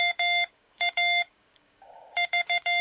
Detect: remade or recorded remade